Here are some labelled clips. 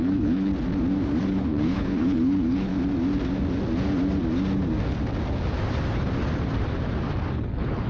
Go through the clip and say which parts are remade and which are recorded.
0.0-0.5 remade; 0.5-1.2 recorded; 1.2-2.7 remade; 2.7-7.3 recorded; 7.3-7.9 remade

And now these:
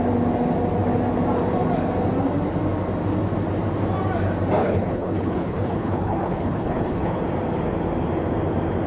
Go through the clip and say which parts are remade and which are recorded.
0.0-4.6 recorded; 4.6-7.2 remade; 7.2-8.9 recorded

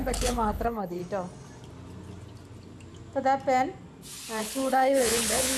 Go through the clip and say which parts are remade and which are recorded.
0.0-1.0 remade; 1.0-4.4 recorded; 4.4-5.6 remade

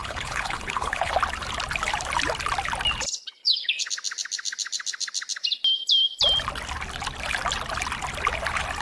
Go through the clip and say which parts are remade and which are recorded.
0.0-1.1 remade; 1.1-3.4 recorded; 3.4-3.9 remade; 3.9-8.8 recorded

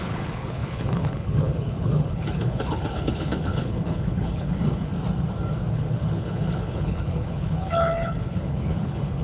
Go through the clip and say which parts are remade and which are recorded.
0.0-4.9 remade; 4.9-5.7 recorded; 5.7-9.2 remade

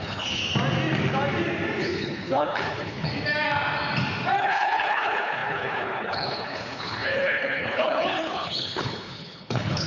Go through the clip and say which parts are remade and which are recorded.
0.0-0.4 remade; 0.4-1.8 recorded; 1.8-3.1 remade; 3.1-4.4 recorded; 4.4-9.9 remade

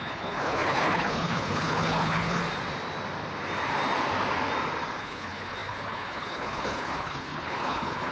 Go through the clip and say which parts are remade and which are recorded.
0.0-2.4 remade; 2.4-5.0 recorded; 5.0-8.1 remade

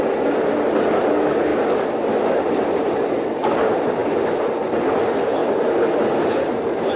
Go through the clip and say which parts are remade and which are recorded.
0.0-7.0 recorded